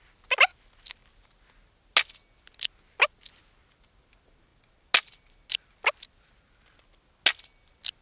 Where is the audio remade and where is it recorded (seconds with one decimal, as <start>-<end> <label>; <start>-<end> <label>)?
0.0-8.0 recorded